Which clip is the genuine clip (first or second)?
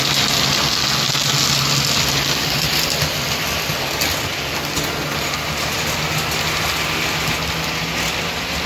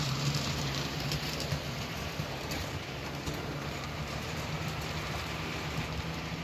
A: first